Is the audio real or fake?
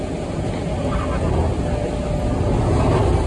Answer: real